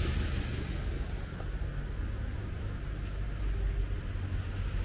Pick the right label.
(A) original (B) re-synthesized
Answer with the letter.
A